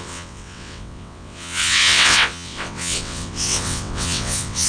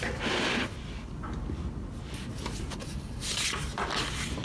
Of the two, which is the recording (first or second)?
second